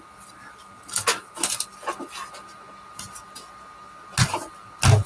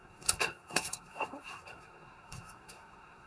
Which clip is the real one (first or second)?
first